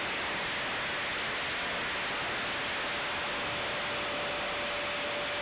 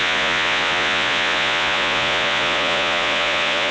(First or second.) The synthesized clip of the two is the second